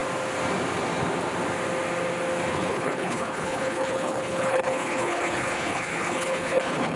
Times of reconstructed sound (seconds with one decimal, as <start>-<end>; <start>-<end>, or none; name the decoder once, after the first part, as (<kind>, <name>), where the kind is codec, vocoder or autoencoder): 2.5-7.0 (codec, HILCodec)